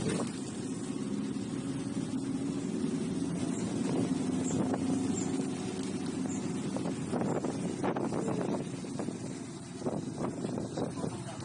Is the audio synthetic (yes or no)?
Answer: no